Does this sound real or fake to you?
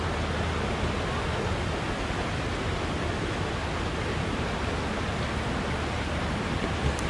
real